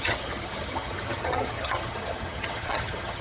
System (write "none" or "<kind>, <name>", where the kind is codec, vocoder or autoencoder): vocoder, HiFi-GAN